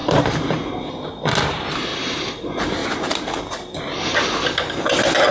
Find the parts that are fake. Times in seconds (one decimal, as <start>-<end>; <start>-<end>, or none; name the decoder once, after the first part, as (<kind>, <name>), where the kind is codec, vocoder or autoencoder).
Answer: 0.0-0.9 (vocoder, BigVGAN v2); 1.9-2.4; 2.8-3.8